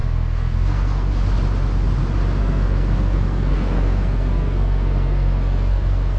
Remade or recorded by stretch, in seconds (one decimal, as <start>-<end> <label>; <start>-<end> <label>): 0.0-1.1 remade; 1.1-2.4 recorded; 2.4-6.2 remade